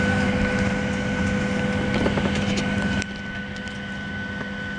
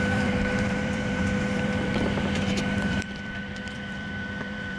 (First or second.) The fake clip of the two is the second